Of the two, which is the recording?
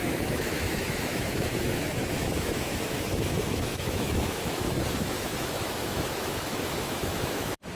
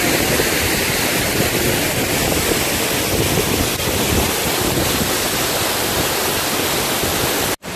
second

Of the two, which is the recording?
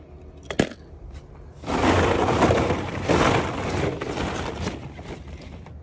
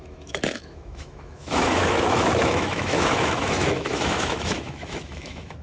first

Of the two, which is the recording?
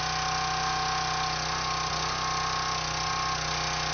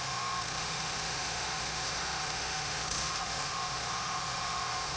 first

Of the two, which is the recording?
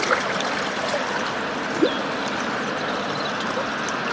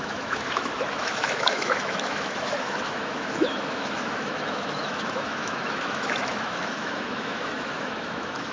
first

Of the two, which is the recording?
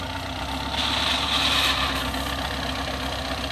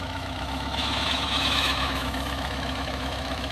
first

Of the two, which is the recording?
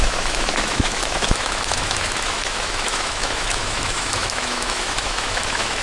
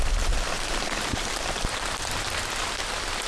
second